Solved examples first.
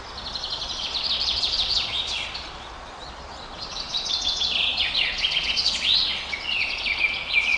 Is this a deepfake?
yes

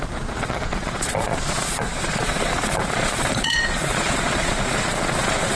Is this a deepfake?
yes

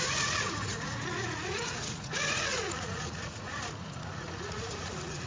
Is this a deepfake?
yes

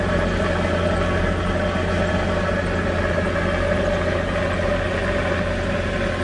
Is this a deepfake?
no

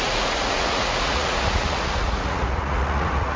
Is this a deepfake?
yes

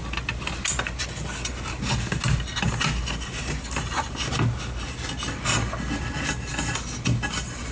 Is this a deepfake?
no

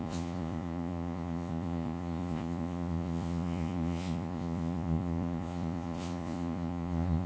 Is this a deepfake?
yes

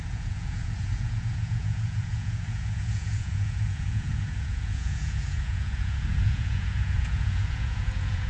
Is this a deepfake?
yes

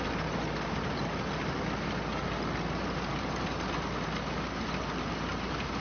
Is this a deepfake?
no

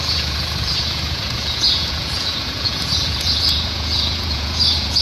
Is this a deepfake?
yes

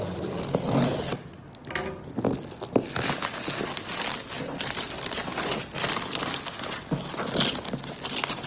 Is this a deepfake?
no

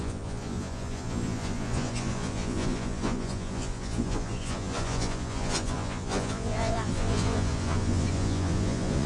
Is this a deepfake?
yes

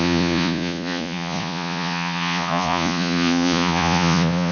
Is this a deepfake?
yes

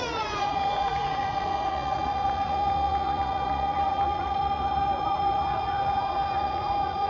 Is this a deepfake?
yes